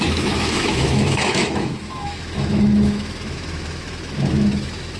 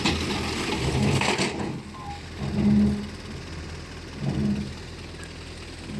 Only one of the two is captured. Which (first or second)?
second